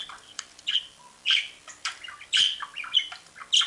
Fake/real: fake